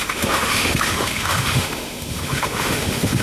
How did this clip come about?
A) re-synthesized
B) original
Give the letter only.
A